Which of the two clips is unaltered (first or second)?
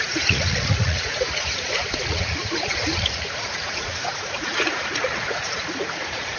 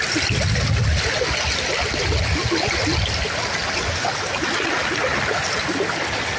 second